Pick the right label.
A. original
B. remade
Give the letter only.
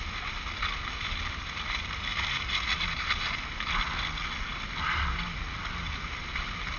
A